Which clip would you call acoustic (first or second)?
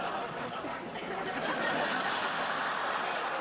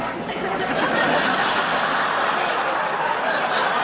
second